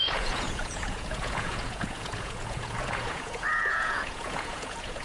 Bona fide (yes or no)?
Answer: no